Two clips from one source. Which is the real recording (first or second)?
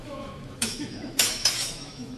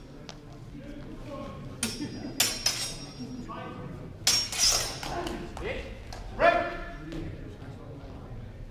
second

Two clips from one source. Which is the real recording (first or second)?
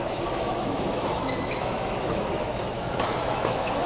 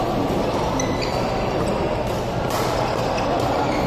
second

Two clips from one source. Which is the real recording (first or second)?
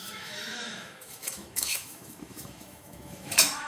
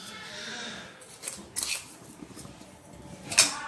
second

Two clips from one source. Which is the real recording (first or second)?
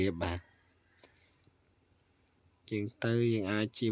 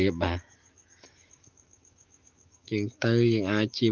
first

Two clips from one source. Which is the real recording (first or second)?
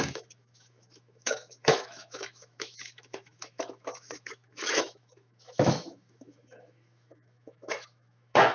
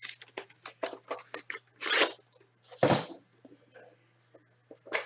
second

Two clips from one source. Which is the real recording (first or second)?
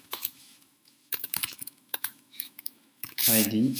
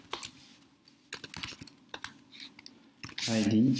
second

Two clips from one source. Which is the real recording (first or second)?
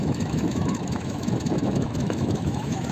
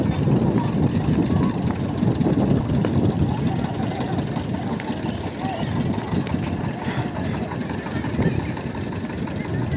second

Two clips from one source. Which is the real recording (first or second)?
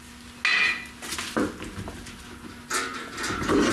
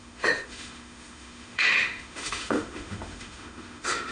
first